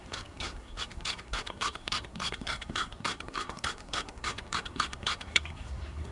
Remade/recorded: remade